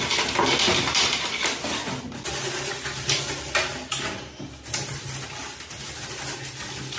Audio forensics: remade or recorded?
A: recorded